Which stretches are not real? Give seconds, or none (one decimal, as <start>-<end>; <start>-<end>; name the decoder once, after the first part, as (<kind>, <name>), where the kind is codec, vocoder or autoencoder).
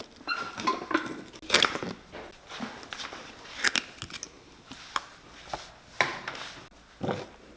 none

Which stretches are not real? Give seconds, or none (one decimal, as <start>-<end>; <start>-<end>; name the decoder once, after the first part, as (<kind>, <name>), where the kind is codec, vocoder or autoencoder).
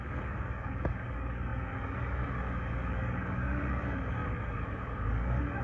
0.0-5.6 (codec, DAC)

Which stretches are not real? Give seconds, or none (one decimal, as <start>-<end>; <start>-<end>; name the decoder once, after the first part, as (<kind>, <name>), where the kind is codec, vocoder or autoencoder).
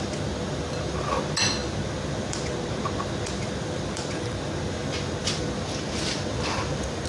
none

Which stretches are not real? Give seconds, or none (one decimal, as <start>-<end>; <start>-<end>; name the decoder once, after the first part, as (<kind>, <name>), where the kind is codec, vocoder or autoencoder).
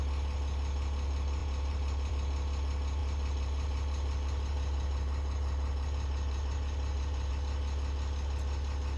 1.4-2.1 (vocoder, BigVGAN v2); 3.0-7.3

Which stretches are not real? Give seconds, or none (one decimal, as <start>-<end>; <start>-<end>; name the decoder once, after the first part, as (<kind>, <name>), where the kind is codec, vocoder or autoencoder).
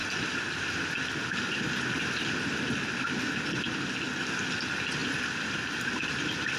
5.0-5.7 (vocoder, BigVGAN v2)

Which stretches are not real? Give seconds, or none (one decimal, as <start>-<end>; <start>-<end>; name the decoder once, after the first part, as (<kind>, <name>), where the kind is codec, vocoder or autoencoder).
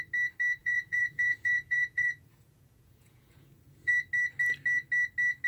0.6-3.9 (vocoder, Vocos)